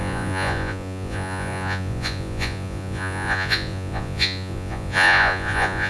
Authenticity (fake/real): fake